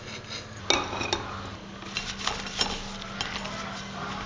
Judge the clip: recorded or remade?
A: recorded